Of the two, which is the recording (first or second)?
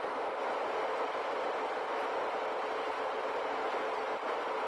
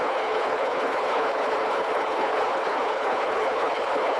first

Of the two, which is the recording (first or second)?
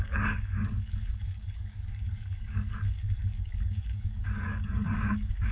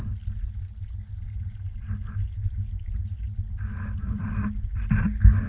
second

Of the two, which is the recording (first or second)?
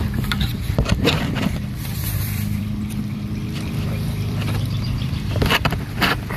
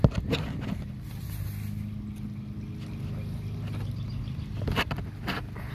second